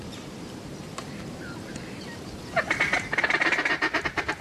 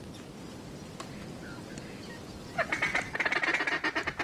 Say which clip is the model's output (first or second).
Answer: first